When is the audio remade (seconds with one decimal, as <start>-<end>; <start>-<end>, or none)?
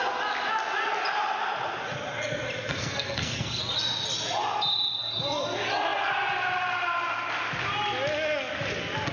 2.7-3.6